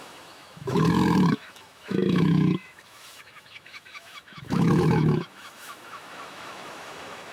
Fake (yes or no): yes